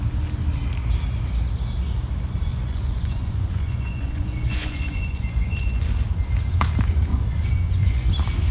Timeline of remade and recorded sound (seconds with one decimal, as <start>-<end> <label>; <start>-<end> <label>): 0.0-2.5 recorded; 2.5-5.9 remade; 5.9-7.1 recorded; 7.1-8.1 remade; 8.1-8.5 recorded